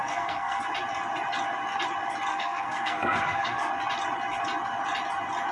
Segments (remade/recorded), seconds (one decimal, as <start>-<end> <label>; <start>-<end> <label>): 0.0-0.6 remade; 0.6-2.3 recorded; 2.3-3.7 remade; 3.7-5.5 recorded